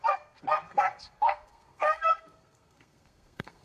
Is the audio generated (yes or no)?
yes